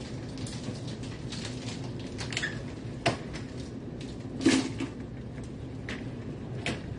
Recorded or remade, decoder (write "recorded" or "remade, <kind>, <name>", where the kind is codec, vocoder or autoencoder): recorded